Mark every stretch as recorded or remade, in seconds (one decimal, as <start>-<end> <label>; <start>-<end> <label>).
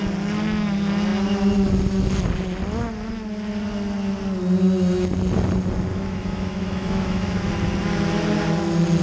0.0-5.9 recorded; 5.9-7.5 remade; 7.5-9.0 recorded